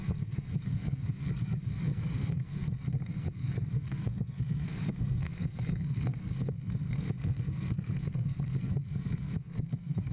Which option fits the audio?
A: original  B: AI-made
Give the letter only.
B